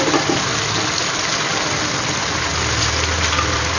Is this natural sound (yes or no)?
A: yes